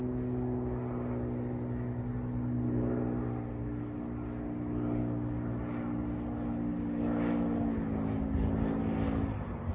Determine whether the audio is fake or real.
real